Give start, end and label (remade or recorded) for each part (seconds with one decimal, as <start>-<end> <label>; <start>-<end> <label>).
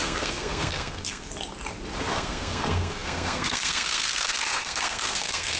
0.0-1.3 remade; 1.3-2.1 recorded; 2.1-5.6 remade